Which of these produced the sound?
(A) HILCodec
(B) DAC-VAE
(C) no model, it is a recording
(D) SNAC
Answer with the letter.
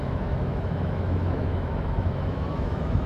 B